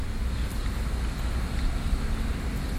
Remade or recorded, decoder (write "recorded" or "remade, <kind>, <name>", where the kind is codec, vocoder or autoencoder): recorded